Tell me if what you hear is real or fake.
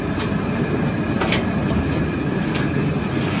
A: real